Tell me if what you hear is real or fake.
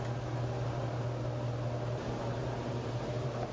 real